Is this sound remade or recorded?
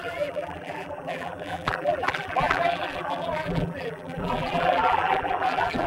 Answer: remade